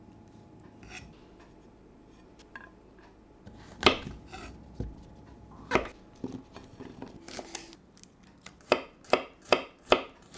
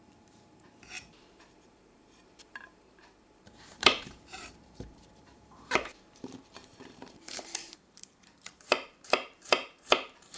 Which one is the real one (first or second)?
first